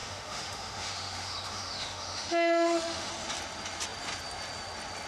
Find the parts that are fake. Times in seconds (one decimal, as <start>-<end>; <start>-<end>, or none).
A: 0.0-3.1